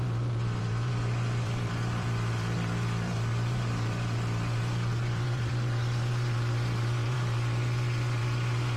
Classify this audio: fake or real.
fake